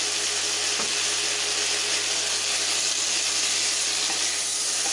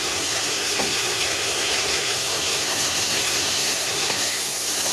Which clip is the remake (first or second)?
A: second